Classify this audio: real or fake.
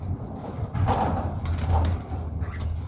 real